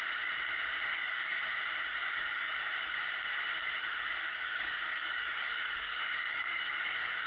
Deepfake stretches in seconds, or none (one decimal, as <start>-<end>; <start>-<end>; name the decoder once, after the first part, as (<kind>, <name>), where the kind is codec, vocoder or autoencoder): 0.9-1.4 (codec, DAC); 2.0-2.5; 4.2-7.3